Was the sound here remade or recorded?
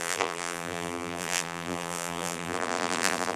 remade